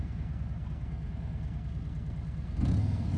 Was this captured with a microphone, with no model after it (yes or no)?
no